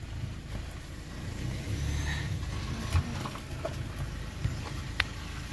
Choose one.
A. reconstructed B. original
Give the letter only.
B